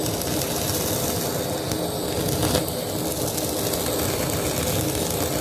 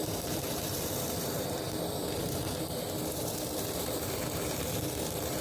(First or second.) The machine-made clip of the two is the second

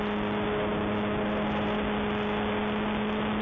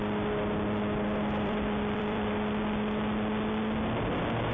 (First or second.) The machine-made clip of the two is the second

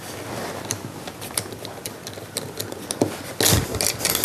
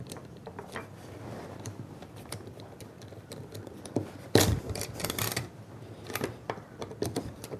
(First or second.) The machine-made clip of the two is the second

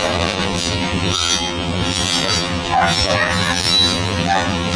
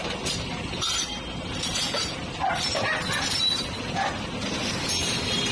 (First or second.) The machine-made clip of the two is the first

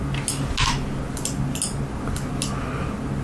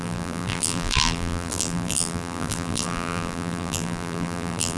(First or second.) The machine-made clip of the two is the second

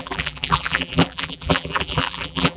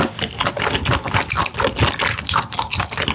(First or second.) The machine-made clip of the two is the first